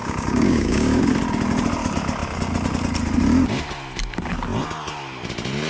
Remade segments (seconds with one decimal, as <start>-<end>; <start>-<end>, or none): 0.0-1.1